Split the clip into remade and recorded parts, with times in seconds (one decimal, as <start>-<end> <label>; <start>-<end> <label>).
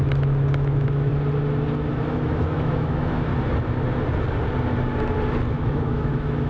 0.0-1.1 remade; 1.1-1.9 recorded; 1.9-3.3 remade; 3.3-5.5 recorded; 5.5-6.5 remade